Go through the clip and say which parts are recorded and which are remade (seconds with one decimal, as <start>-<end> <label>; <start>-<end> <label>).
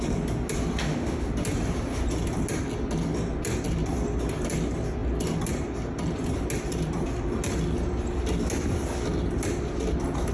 0.0-0.8 recorded; 0.8-1.3 remade; 1.3-10.3 recorded